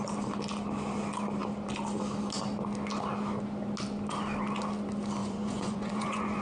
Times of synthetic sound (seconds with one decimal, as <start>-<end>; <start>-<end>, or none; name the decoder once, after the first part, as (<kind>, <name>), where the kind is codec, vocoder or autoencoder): 5.2-6.4 (vocoder, Vocos)